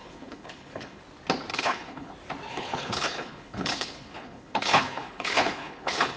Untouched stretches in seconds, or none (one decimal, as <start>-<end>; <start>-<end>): 1.0-1.5; 2.1-2.5